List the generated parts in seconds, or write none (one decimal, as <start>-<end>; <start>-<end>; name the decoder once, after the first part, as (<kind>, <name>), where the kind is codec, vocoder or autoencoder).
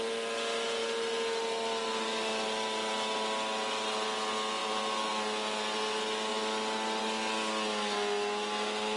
4.6-5.1 (vocoder, BigVGAN v2)